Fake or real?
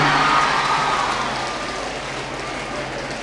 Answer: real